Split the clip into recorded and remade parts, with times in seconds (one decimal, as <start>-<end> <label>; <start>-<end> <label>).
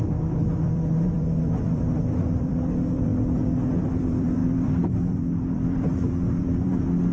0.0-3.1 remade; 3.1-3.8 recorded; 3.8-7.1 remade